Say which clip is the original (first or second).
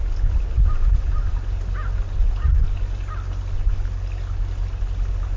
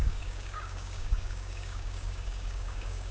first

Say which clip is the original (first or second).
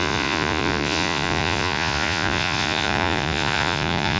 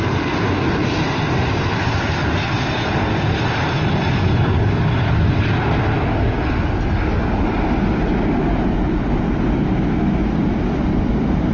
second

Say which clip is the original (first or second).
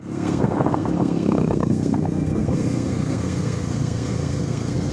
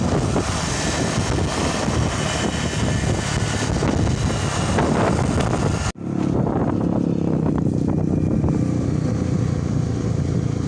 second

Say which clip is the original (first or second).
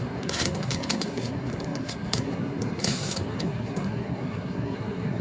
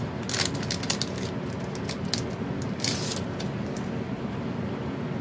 second